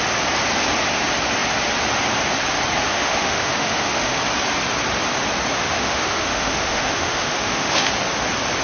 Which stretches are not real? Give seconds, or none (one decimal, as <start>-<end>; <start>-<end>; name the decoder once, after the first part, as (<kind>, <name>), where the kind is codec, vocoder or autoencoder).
2.9-4.2 (autoencoder, DAC-VAE); 5.6-7.9